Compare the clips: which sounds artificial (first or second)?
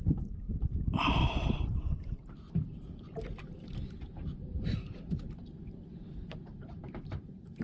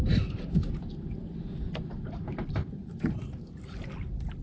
first